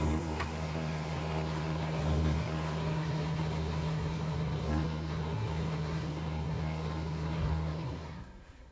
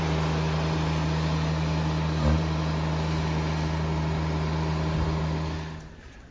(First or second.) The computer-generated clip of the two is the first